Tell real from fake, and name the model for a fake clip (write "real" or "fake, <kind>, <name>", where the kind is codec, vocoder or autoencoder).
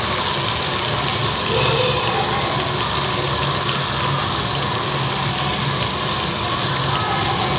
real